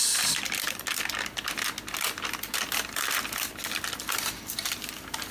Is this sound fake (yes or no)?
no